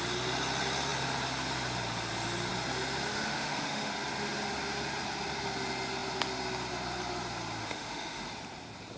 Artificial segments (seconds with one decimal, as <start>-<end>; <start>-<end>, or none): 3.1-3.9; 7.6-8.2